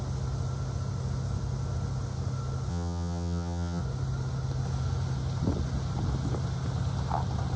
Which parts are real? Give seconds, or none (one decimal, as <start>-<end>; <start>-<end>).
0.0-2.7; 3.8-7.6

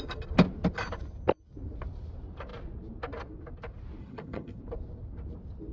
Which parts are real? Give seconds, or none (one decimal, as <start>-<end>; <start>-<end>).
0.0-4.0; 4.6-5.7

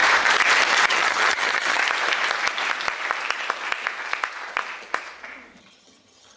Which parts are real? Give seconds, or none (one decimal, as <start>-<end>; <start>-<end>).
0.0-0.9; 1.8-5.6

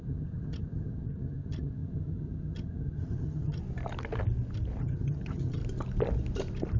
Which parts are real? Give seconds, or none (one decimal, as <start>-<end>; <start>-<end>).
3.6-4.8; 5.6-6.8

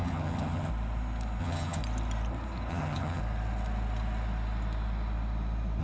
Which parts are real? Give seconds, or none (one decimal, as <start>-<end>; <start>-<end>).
0.7-1.4; 1.8-2.7; 3.2-5.8

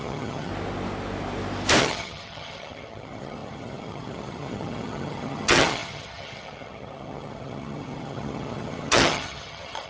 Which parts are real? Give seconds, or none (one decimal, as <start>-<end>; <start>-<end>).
0.5-1.8

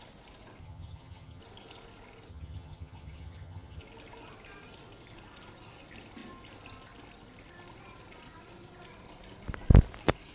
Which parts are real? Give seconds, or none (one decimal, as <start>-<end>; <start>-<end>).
0.0-0.6; 1.4-2.3; 3.8-10.3

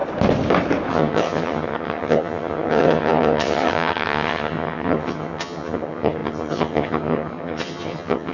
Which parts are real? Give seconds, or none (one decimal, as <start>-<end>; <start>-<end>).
0.0-0.9